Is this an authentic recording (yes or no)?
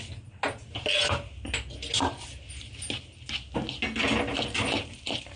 yes